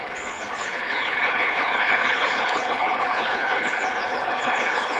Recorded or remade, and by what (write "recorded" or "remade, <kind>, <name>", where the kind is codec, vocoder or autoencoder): remade, codec, HILCodec